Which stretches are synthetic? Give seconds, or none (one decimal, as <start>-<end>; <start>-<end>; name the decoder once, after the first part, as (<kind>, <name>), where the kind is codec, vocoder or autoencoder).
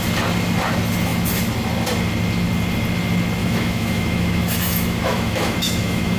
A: 3.4-6.2 (autoencoder, DAC-VAE)